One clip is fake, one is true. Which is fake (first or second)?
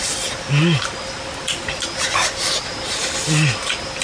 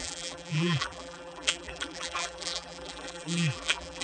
second